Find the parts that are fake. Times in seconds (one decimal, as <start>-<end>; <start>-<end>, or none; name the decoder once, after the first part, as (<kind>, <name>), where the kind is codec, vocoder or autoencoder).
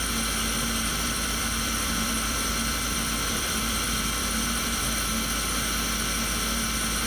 0.9-4.8 (vocoder, BigVGAN v2)